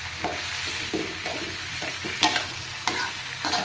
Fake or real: real